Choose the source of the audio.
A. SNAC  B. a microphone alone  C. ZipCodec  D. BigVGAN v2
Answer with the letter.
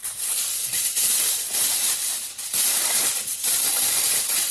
B